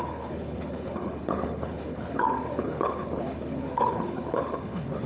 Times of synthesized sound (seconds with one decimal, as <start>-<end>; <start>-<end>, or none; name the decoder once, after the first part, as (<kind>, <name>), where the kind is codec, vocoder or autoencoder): 0.0-5.1 (codec, HILCodec)